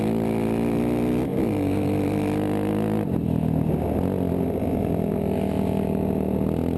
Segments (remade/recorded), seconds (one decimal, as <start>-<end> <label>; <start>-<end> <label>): 0.0-6.8 recorded